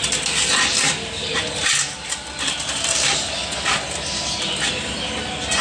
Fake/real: real